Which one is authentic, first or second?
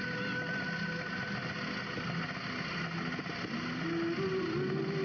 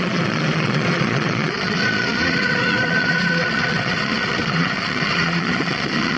first